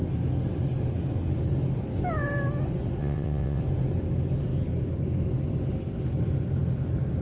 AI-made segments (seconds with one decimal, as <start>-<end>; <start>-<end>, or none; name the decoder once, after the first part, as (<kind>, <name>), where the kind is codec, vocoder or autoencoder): 3.0-3.6 (vocoder, WaveNeXt)